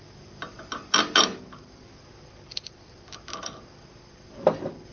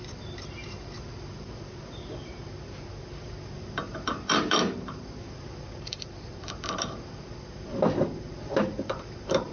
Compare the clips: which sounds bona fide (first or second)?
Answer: first